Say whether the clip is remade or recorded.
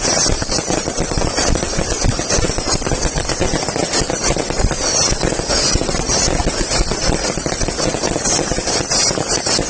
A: recorded